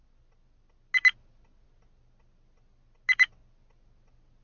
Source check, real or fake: real